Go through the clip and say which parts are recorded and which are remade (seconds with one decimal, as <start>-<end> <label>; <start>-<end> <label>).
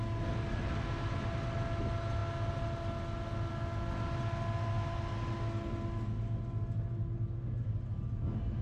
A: 0.0-8.6 recorded